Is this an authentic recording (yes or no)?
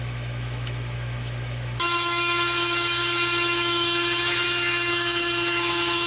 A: no